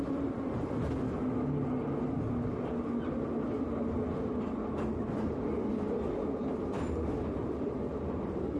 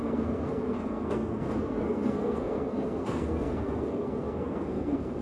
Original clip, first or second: first